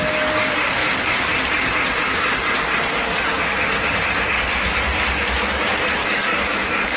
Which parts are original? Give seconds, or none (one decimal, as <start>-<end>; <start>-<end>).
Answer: 0.0-6.0